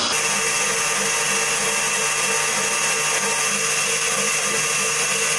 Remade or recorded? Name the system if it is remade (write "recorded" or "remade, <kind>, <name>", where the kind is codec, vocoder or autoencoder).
recorded